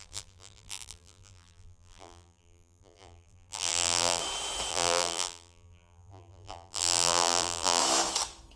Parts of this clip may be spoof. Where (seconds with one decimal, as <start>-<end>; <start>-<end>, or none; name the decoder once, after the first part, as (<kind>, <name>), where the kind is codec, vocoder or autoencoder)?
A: 0.0-4.2 (vocoder, BigVGAN v2); 4.7-7.8